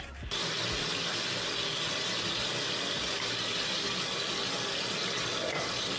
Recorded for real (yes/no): yes